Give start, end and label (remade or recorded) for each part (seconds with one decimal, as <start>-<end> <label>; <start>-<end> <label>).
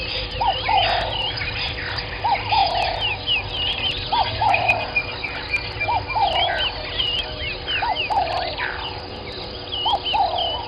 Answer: 0.0-10.7 recorded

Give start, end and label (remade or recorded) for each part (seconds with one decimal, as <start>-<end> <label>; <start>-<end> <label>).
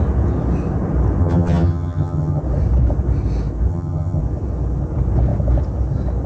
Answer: 0.0-1.2 recorded; 1.2-2.4 remade; 2.4-3.7 recorded; 3.7-4.2 remade; 4.2-6.3 recorded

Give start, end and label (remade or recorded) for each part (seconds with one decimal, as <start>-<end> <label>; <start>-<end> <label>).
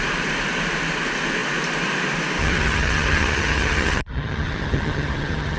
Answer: 0.0-2.4 recorded; 2.4-5.6 remade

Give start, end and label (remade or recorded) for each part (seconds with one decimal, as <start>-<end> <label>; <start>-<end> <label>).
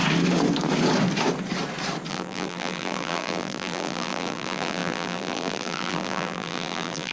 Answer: 0.0-2.1 recorded; 2.1-7.1 remade